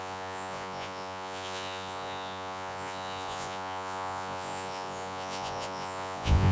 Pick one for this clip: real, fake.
fake